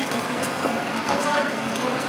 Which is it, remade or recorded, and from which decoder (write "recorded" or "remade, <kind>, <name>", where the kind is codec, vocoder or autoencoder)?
remade, codec, SNAC